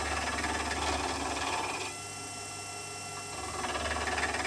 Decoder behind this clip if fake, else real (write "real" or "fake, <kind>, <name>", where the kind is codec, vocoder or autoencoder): real